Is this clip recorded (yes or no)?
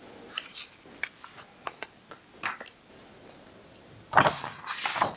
yes